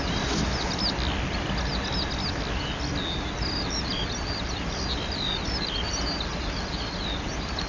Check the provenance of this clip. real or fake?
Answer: real